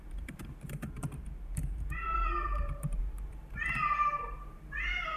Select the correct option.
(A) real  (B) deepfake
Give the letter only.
B